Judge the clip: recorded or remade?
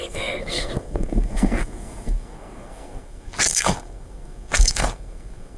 remade